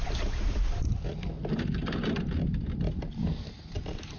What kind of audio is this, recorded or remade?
recorded